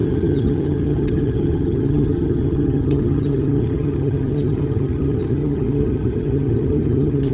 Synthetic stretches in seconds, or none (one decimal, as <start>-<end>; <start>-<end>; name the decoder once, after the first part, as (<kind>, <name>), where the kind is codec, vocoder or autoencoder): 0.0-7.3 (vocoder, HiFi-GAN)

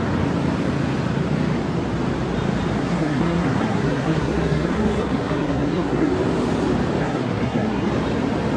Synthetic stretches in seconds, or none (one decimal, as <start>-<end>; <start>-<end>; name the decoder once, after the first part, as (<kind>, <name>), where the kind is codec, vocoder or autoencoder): 2.8-6.1 (codec, SNAC); 7.0-7.9

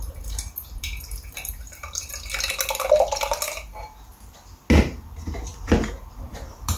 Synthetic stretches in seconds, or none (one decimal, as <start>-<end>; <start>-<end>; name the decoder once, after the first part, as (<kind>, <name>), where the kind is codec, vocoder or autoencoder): 0.0-2.1 (vocoder, BigVGAN v2); 3.1-4.1; 4.8-6.8

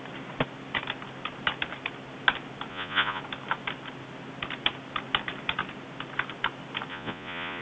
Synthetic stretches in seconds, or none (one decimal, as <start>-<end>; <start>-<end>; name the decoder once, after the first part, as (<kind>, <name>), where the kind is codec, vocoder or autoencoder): 2.7-3.2 (vocoder, Vocos); 6.9-7.6